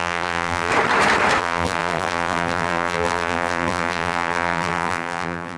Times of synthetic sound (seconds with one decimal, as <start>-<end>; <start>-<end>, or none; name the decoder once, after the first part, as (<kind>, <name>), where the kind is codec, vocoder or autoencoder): 0.0-0.7 (vocoder, BigVGAN v2); 1.4-5.6